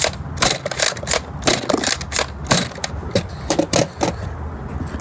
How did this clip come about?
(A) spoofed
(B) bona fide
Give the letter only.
B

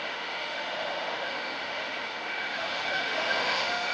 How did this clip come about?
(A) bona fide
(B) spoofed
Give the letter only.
B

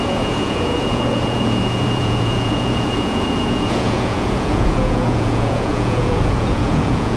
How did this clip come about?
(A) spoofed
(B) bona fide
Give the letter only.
A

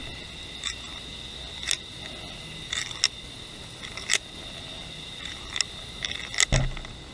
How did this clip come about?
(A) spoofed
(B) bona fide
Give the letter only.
B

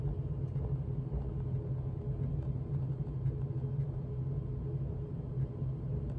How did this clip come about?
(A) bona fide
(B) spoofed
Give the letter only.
A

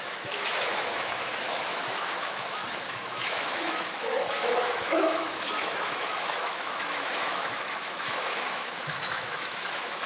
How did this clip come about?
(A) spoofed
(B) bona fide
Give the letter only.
A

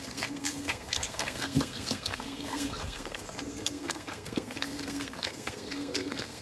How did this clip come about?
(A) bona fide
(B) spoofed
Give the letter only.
B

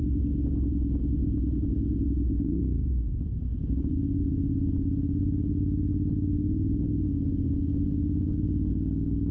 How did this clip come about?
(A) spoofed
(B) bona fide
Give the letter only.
B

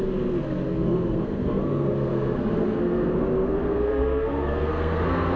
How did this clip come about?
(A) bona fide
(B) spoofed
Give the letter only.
B